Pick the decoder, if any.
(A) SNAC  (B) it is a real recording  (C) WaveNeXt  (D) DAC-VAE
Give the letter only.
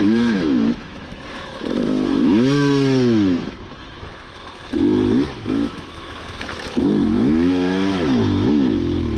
D